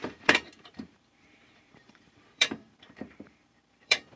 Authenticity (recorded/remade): remade